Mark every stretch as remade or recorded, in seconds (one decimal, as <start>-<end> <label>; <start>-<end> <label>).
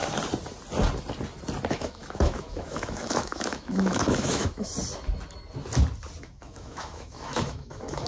0.0-1.7 recorded; 1.7-4.7 remade; 4.7-6.2 recorded; 6.2-8.1 remade